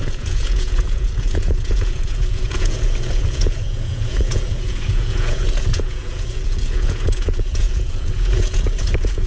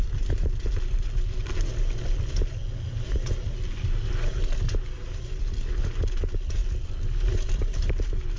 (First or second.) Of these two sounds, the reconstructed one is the first